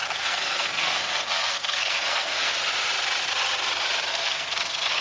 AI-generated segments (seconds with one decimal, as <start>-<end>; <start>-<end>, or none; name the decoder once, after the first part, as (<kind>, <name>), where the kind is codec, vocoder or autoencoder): 0.0-2.5 (codec, SNAC); 4.1-5.0